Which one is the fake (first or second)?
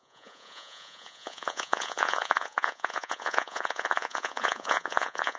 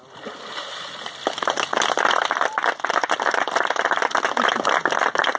first